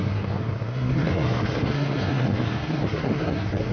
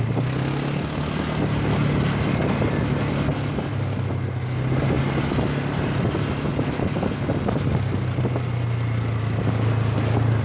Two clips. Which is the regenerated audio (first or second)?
first